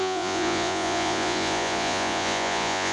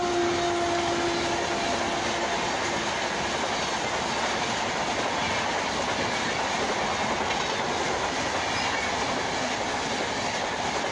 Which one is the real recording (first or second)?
second